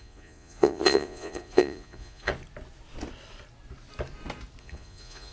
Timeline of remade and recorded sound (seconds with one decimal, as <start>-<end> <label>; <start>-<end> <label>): 0.0-2.3 remade; 2.3-4.6 recorded; 4.6-5.3 remade